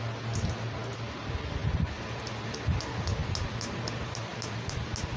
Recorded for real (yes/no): yes